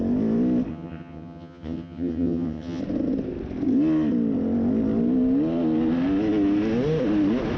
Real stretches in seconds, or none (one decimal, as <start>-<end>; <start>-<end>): 0.0-0.7; 2.8-7.6